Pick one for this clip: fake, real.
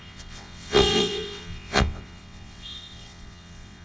fake